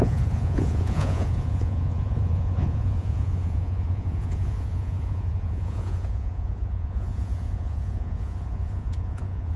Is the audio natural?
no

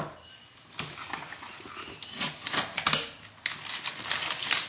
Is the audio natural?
yes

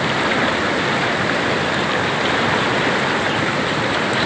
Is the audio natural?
yes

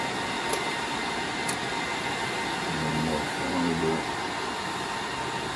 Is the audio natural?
yes